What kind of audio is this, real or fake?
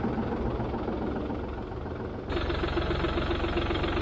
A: real